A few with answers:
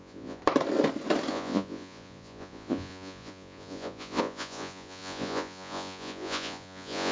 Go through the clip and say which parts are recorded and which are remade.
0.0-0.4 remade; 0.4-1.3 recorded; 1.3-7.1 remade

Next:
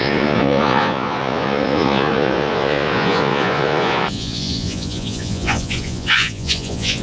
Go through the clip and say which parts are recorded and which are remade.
0.0-7.0 remade